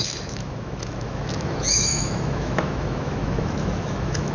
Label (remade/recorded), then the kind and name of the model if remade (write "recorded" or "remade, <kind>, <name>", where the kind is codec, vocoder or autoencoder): remade, autoencoder, DAC-VAE